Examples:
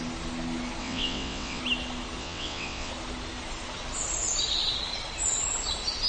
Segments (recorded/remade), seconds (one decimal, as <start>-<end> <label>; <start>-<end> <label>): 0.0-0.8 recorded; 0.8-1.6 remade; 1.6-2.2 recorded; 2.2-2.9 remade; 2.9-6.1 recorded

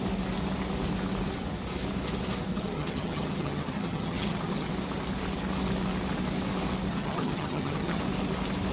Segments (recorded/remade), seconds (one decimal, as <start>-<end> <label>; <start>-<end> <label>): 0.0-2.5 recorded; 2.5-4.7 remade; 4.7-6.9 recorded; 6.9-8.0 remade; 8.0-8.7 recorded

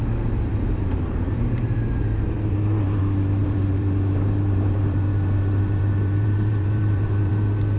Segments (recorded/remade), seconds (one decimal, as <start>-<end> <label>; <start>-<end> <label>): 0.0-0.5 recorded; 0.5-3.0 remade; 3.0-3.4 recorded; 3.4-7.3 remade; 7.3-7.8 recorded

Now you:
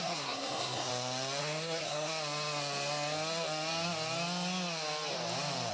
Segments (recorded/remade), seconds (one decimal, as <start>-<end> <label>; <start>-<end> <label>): 0.0-0.9 remade; 0.9-1.4 recorded; 1.4-2.1 remade; 2.1-5.7 recorded